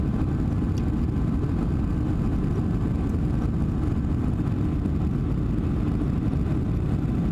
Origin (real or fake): real